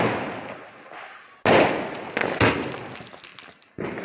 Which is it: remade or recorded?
recorded